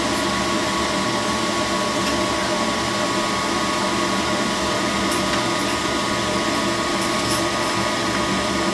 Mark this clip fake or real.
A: real